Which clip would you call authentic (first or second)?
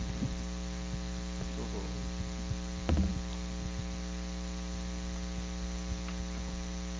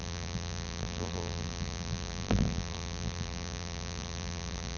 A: first